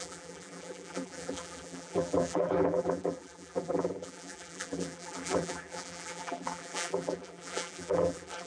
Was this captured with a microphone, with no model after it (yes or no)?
no